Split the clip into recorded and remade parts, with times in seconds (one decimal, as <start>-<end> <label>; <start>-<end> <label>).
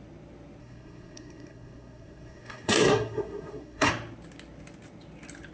0.0-0.6 recorded; 0.6-3.9 remade; 3.9-5.5 recorded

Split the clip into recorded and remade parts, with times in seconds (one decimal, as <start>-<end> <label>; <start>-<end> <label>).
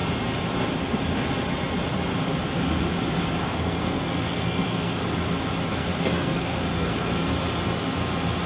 0.0-3.4 recorded; 3.4-5.0 remade; 5.0-5.7 recorded; 5.7-7.3 remade; 7.3-8.5 recorded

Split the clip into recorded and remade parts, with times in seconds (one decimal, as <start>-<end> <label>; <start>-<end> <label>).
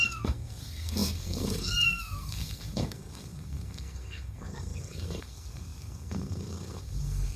0.0-7.4 remade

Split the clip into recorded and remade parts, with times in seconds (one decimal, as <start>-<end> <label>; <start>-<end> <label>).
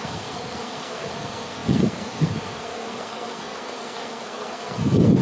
0.0-5.2 remade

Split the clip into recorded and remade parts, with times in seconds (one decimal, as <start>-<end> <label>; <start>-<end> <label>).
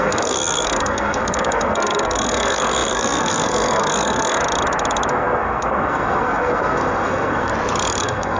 0.0-4.4 remade; 4.4-5.1 recorded; 5.1-7.5 remade; 7.5-8.0 recorded; 8.0-8.4 remade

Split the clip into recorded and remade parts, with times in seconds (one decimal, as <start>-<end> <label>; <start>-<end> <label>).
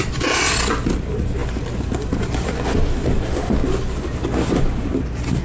0.0-5.4 recorded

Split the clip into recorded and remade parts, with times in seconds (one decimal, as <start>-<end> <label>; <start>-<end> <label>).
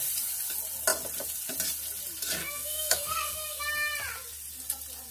0.0-2.4 recorded; 2.4-3.6 remade; 3.6-5.1 recorded